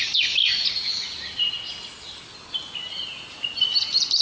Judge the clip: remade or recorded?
recorded